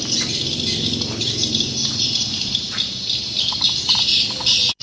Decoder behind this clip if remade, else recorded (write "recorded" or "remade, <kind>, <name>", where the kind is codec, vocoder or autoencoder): recorded